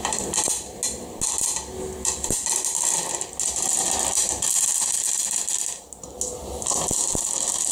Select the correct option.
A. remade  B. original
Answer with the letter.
B